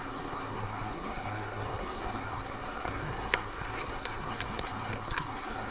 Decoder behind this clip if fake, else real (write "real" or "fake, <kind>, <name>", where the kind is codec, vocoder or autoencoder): fake, codec, SNAC